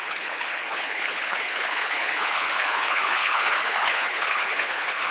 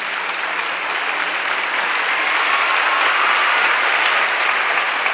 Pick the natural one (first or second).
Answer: second